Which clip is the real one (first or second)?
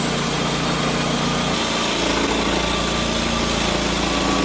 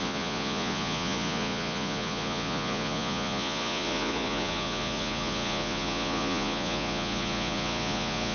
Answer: first